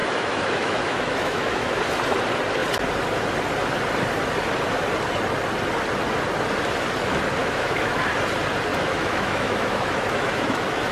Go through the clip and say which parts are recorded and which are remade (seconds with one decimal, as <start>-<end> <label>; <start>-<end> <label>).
0.0-1.8 remade; 1.8-7.4 recorded; 7.4-8.0 remade; 8.0-8.7 recorded; 8.7-10.9 remade